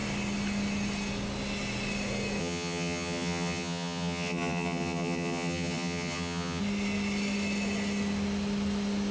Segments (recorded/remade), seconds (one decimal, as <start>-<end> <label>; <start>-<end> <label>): 0.0-2.4 recorded; 2.4-6.6 remade; 6.6-9.1 recorded

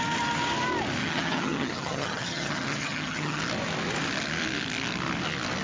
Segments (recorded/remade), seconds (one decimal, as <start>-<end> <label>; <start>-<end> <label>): 0.0-1.0 recorded; 1.0-3.4 remade; 3.4-5.6 recorded